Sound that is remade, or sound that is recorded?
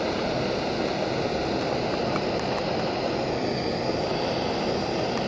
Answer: recorded